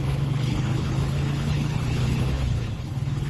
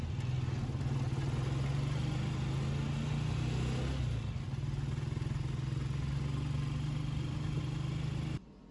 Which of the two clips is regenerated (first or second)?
first